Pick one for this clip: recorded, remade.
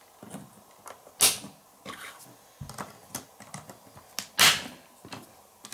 recorded